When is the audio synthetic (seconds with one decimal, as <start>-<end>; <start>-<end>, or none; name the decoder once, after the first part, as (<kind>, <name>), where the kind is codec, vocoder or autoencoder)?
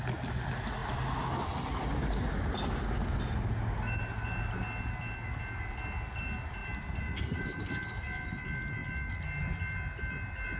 6.6-7.4 (vocoder, BigVGAN v2); 8.8-9.4